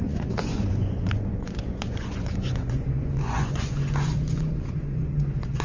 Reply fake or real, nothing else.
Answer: fake